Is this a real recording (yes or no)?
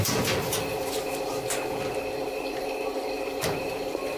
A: yes